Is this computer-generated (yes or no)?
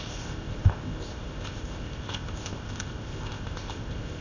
yes